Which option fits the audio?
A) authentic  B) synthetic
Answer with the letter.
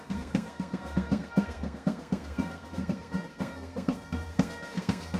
B